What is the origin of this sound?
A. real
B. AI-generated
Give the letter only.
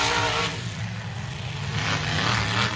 A